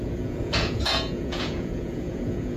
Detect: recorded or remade remade